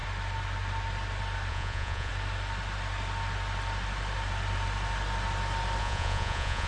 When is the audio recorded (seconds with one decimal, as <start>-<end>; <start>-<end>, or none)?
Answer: 0.0-1.5; 2.1-5.8